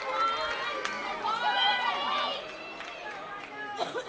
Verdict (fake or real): real